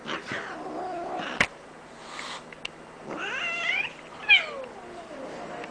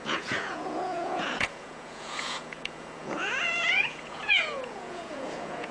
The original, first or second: first